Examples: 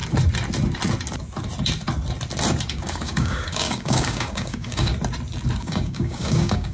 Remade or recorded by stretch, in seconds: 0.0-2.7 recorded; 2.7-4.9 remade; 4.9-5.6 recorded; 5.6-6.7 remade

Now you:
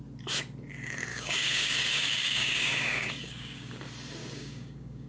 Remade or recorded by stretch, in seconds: 0.0-1.1 recorded; 1.1-3.8 remade; 3.8-4.2 recorded; 4.2-5.1 remade

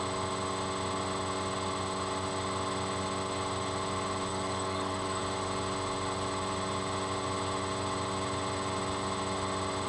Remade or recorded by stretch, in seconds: 0.0-4.3 recorded; 4.3-5.2 remade; 5.2-9.9 recorded

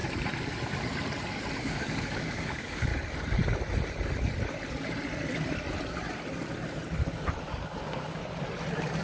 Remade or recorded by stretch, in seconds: 0.0-1.6 recorded; 1.6-2.9 remade; 2.9-7.4 recorded; 7.4-8.2 remade; 8.2-9.0 recorded

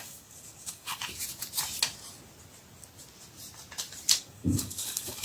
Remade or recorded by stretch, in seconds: 0.0-1.0 remade; 1.0-4.1 recorded; 4.1-5.2 remade

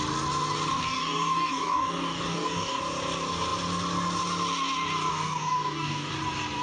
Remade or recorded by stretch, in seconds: 0.0-0.7 recorded; 0.7-2.8 remade; 2.8-5.1 recorded; 5.1-6.1 remade; 6.1-6.6 recorded

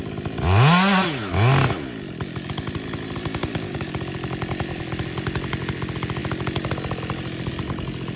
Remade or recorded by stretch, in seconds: 0.0-3.2 recorded; 3.2-3.9 remade; 3.9-8.2 recorded

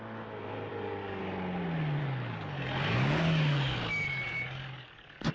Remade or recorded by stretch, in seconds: 0.0-0.7 recorded; 0.7-1.2 remade; 1.2-2.0 recorded; 2.0-5.3 remade